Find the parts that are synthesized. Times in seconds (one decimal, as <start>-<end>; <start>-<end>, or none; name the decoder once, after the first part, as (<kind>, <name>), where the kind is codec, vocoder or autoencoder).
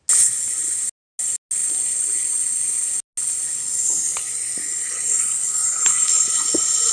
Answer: none